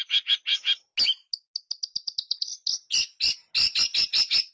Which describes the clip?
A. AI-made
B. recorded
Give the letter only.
B